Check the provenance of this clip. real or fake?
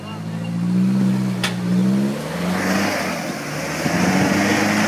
real